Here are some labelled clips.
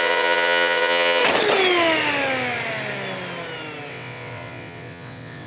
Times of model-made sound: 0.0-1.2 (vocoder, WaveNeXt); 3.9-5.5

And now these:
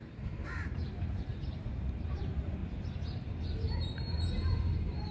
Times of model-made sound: 0.0-2.6 (vocoder, BigVGAN v2); 3.3-5.1

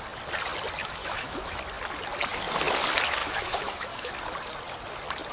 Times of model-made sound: 0.8-1.6 (autoencoder, DAC-VAE); 3.2-4.1

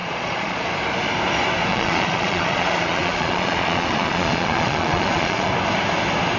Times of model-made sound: 0.0-0.7 (vocoder, Vocos); 1.7-5.5

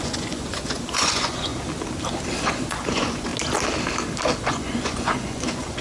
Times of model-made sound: 0.0-1.5 (vocoder, Vocos); 2.4-3.3; 4.4-5.8

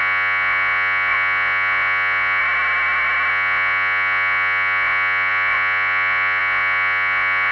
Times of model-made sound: 0.0-2.4 (vocoder, Vocos); 3.3-7.5

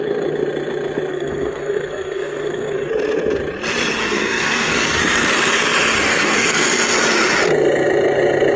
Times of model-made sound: 1.1-2.9 (codec, SNAC); 4.0-5.0; 6.1-6.6